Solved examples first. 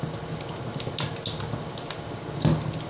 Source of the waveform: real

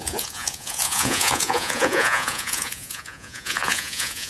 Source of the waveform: fake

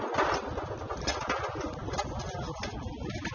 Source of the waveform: real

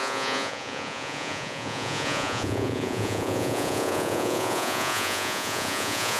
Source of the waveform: fake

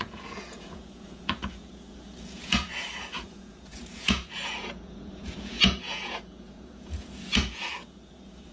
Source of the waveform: fake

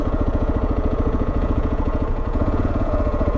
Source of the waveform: fake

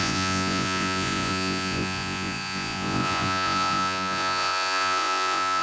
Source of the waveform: fake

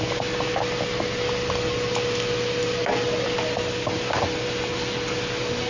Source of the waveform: real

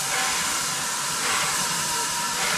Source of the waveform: real